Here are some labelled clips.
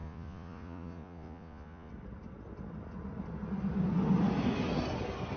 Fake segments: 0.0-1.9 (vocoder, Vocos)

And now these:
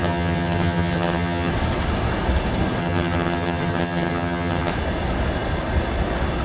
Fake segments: 0.0-1.5 (vocoder, HiFi-GAN); 2.8-4.7

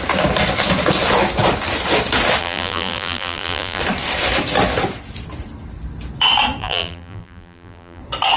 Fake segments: 2.4-3.8 (vocoder, BigVGAN v2); 6.6-8.0

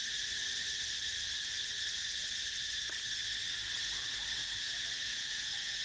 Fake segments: 4.4-5.8 (vocoder, Vocos)

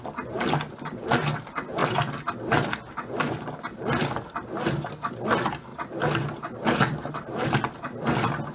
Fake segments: none

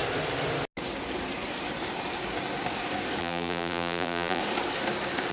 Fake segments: 3.2-4.4 (vocoder, BigVGAN v2)

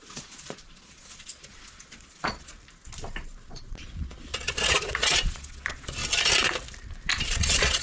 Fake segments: 0.0-2.5 (vocoder, Vocos); 3.5-6.0; 7.2-7.8

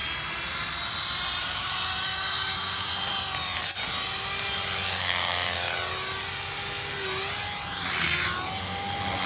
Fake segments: 1.4-2.9 (codec, DAC); 5.0-5.7